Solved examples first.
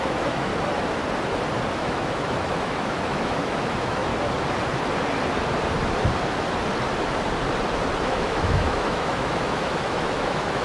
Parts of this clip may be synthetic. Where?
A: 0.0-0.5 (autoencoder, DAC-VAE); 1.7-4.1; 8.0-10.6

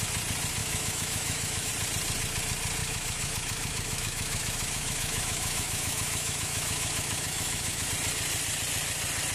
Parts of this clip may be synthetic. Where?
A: 0.6-1.7 (autoencoder, DAC-VAE); 2.8-7.9